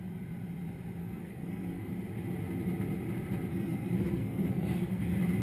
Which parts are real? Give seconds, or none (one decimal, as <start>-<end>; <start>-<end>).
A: 0.0-1.0; 1.9-3.5; 5.0-5.4